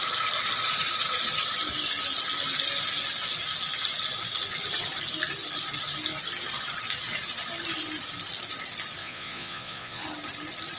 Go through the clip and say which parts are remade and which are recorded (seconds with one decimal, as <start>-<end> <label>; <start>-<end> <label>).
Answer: 0.0-9.0 recorded; 9.0-10.0 remade; 10.0-10.8 recorded

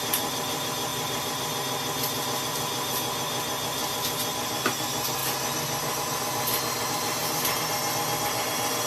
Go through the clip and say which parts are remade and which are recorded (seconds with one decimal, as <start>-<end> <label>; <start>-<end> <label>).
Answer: 0.0-0.9 recorded; 0.9-1.5 remade; 1.5-8.9 recorded